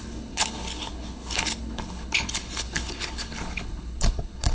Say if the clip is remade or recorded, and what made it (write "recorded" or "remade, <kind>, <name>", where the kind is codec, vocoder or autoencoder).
remade, codec, HILCodec